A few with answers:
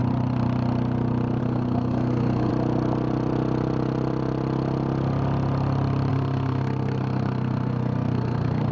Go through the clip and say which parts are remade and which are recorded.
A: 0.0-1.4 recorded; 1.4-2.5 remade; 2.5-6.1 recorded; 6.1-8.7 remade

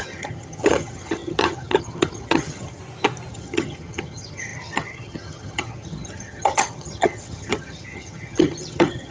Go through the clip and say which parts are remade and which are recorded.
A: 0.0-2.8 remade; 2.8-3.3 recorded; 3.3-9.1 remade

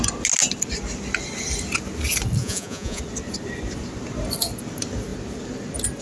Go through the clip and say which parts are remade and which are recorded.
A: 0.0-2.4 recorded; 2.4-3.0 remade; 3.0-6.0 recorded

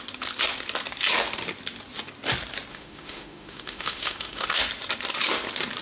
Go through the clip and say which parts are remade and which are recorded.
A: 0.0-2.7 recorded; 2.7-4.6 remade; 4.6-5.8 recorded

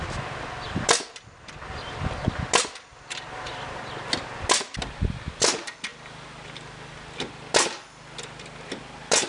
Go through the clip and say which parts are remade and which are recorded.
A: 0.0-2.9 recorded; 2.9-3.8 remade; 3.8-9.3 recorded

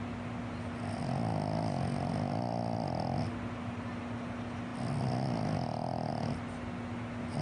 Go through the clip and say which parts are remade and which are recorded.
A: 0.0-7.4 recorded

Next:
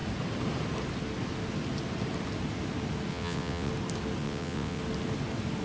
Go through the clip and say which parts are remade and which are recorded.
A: 0.0-3.1 recorded; 3.1-3.7 remade; 3.7-4.2 recorded; 4.2-4.8 remade; 4.8-5.6 recorded

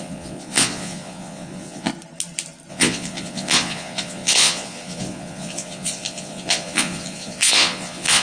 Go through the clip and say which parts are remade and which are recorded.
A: 0.0-1.9 remade; 1.9-2.7 recorded; 2.7-8.2 remade